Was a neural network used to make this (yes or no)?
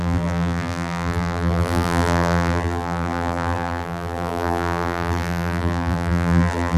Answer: yes